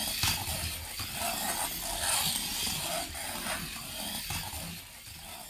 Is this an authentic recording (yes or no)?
yes